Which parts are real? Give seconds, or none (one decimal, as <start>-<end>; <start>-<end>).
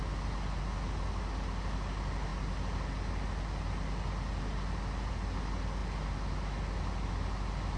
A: 0.0-7.8